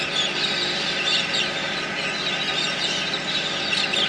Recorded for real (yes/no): yes